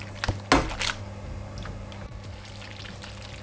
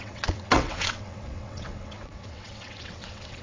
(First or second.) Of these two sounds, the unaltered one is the first